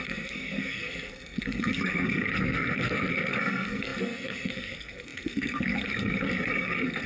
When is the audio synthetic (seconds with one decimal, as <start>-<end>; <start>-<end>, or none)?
0.0-7.1